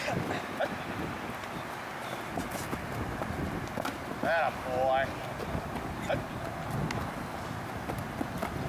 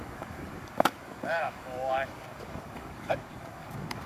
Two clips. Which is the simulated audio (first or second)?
second